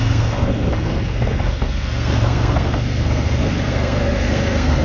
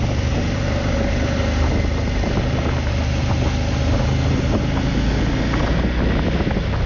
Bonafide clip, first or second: second